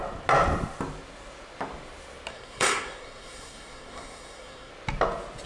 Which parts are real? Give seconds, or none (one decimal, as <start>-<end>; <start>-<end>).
0.0-2.3; 4.7-5.5